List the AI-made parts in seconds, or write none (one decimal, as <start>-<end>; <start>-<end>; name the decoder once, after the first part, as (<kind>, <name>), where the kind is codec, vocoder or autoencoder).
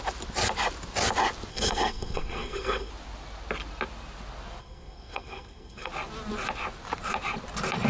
1.5-2.9 (codec, SNAC); 4.6-5.9